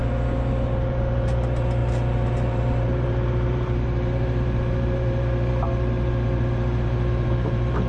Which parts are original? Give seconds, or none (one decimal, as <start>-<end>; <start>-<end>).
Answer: 0.0-0.5